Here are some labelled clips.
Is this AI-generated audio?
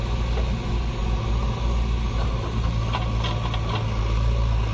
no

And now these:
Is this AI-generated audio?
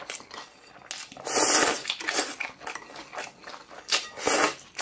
no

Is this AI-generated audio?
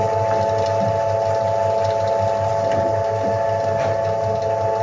no